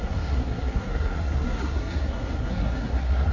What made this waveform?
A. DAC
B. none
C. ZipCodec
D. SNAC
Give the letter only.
D